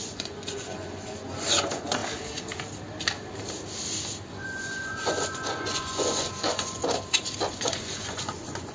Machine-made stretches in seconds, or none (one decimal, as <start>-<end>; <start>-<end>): 0.0-2.0; 4.3-6.8; 7.5-8.7